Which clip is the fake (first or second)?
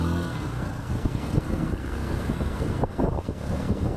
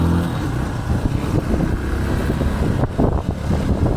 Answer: first